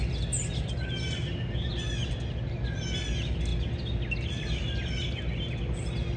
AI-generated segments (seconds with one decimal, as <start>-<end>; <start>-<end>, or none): none